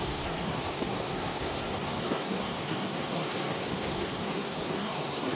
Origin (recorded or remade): remade